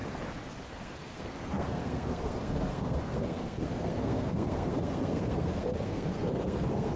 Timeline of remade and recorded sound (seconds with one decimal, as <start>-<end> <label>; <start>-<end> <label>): 0.0-0.7 recorded; 0.7-7.0 remade

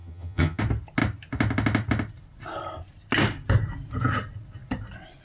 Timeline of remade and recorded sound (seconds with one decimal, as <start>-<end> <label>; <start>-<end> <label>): 0.0-0.6 remade; 0.6-5.2 recorded

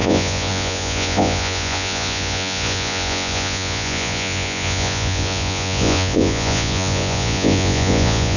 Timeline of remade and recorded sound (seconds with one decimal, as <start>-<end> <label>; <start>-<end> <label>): 0.0-8.4 remade

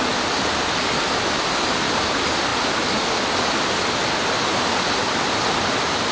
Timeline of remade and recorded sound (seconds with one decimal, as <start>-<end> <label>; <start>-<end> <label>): 0.0-6.1 recorded

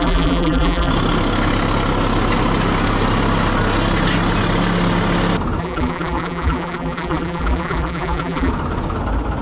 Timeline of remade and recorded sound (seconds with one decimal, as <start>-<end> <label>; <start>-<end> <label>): 0.0-0.9 remade; 0.9-5.6 recorded; 5.6-8.5 remade; 8.5-9.4 recorded